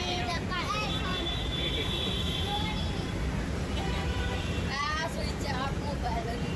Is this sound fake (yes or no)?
yes